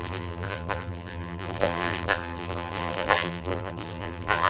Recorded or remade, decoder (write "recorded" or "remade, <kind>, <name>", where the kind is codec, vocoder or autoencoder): remade, vocoder, BigVGAN v2